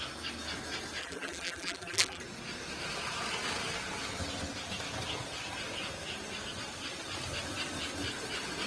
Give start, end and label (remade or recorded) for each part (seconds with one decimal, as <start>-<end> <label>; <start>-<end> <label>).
0.0-1.0 recorded; 1.0-2.2 remade; 2.2-8.7 recorded